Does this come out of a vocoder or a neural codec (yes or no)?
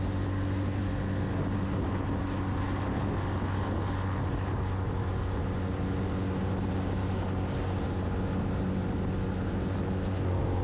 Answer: no